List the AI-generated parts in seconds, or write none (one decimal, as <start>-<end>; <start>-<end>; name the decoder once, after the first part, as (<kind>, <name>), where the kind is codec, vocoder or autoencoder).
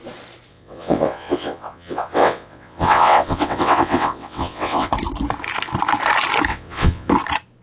0.5-4.9 (vocoder, WaveNeXt); 6.5-7.1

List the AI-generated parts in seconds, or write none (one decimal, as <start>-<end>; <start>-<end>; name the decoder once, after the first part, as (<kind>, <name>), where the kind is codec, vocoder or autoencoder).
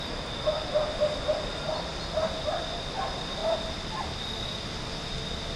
none